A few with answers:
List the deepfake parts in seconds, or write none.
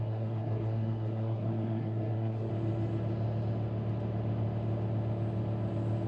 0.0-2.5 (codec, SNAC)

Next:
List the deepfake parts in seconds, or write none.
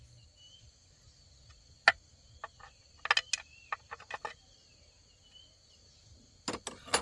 none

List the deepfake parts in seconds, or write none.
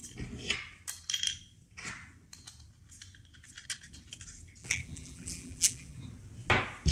4.6-6.0 (vocoder, BigVGAN v2)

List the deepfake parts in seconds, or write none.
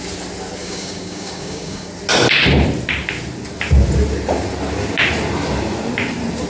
0.6-1.9 (codec, DAC)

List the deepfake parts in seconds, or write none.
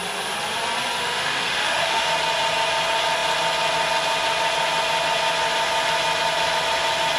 1.0-2.1 (autoencoder, DAC-VAE)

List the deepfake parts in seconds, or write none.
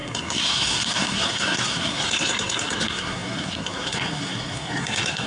0.0-5.3 (codec, SNAC)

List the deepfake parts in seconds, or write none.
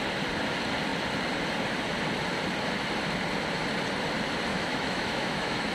4.5-5.7 (autoencoder, DAC-VAE)